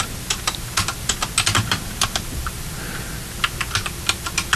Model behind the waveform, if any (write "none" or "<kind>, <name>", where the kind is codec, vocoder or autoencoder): none